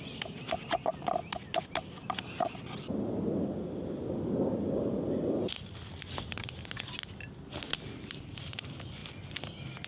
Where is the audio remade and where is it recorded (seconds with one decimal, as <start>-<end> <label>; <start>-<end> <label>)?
0.0-9.9 recorded